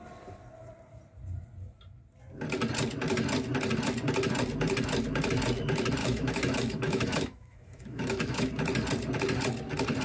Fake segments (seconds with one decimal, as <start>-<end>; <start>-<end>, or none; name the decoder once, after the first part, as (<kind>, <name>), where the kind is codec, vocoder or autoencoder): 6.0-8.5 (autoencoder, DAC-VAE)